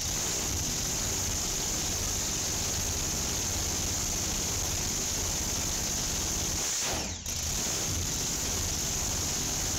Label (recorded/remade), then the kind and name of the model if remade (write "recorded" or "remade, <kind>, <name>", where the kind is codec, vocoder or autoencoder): recorded